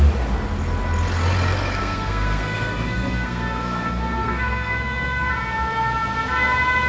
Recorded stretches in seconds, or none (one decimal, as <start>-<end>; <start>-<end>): 0.0-1.8; 5.3-6.9